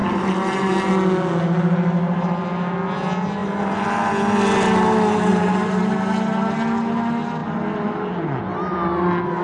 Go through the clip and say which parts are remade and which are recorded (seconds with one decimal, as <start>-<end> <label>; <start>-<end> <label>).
0.0-0.9 remade; 0.9-3.4 recorded; 3.4-4.1 remade; 4.1-5.3 recorded; 5.3-5.8 remade; 5.8-9.4 recorded